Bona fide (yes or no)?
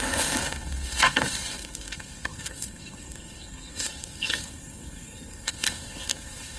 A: no